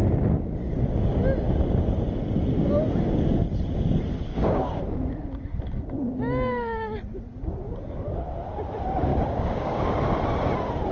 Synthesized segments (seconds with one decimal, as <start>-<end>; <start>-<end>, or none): 4.3-4.8; 9.1-9.9